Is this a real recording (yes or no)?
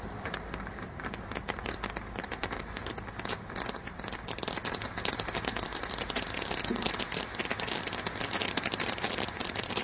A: no